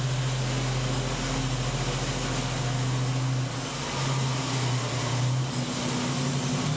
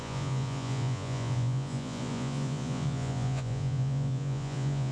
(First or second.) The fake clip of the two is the second